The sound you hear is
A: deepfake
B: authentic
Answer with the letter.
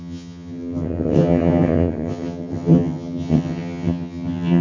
A